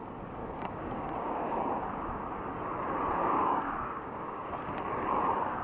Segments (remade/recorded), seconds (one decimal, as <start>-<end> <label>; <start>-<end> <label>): 0.0-0.4 recorded; 0.4-1.6 remade; 1.6-3.2 recorded; 3.2-4.4 remade; 4.4-5.6 recorded